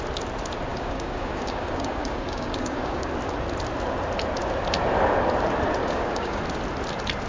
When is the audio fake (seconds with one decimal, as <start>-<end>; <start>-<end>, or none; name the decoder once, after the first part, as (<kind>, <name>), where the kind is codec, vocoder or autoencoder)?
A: 0.7-3.1 (codec, DAC); 5.8-6.4